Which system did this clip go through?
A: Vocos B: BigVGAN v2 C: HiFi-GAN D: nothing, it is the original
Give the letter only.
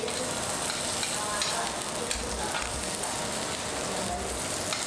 D